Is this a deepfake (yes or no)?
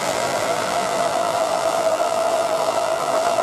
yes